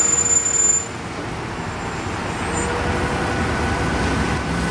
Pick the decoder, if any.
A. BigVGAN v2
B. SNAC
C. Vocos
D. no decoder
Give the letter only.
D